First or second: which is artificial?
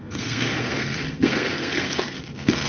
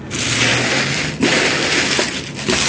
first